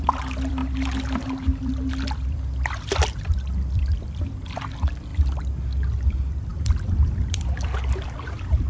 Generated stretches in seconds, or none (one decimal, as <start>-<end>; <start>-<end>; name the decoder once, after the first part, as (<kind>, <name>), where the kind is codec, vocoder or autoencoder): 0.0-0.6 (vocoder, BigVGAN v2); 1.9-5.1; 5.9-8.7